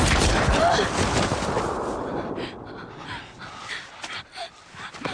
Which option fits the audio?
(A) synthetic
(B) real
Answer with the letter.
B